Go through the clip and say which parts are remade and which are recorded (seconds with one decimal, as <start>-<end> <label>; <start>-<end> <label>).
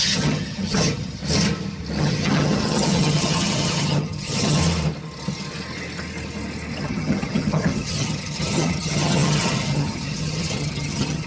0.0-1.2 remade; 1.2-2.0 recorded; 2.0-4.6 remade; 4.6-6.8 recorded; 6.8-11.3 remade